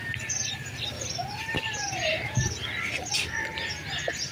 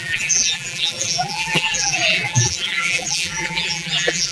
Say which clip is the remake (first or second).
second